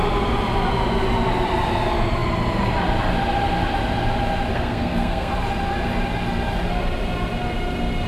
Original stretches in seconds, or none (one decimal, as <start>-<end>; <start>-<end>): 0.0-4.5; 5.3-8.1